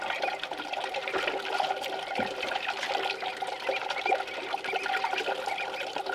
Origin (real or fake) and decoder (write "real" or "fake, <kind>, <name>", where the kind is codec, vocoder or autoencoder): real